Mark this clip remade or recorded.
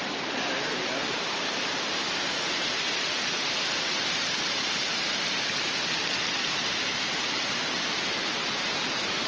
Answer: remade